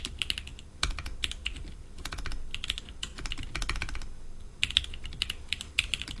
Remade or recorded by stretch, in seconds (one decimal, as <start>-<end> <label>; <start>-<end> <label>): 0.0-6.2 recorded